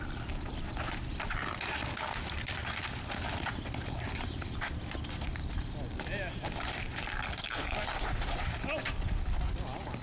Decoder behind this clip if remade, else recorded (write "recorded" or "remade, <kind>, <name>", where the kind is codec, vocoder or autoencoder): recorded